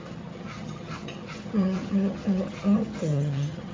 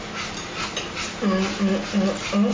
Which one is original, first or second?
second